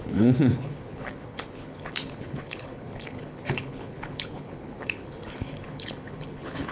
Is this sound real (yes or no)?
no